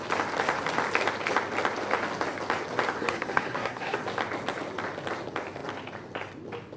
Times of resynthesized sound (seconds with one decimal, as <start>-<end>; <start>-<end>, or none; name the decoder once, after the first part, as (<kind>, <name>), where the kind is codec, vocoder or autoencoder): 3.0-4.0 (codec, SNAC)